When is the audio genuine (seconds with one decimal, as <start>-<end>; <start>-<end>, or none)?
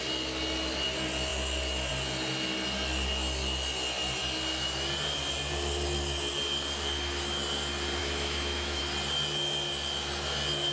0.0-8.0; 8.8-10.7